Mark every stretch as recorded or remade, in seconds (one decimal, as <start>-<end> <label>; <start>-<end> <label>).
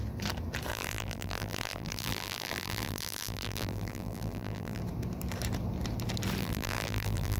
0.0-0.7 recorded; 0.7-4.8 remade; 4.8-6.4 recorded; 6.4-7.4 remade